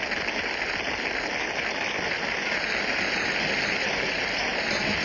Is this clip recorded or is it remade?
recorded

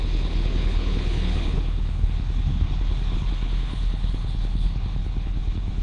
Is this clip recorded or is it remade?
remade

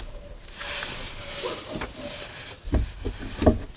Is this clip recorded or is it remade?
recorded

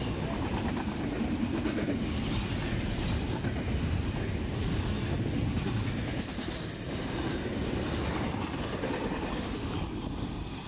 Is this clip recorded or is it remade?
recorded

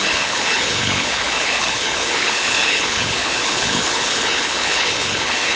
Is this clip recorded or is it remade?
remade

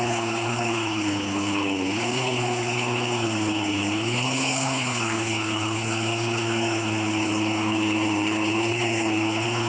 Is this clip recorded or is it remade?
remade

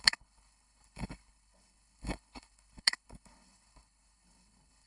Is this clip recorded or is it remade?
remade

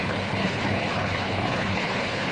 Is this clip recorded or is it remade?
remade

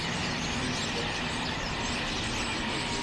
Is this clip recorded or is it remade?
recorded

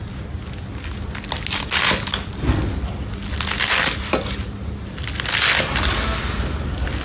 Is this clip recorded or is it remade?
recorded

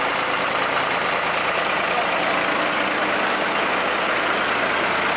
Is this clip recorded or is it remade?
recorded